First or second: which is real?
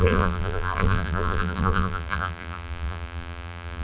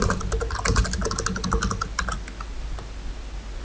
second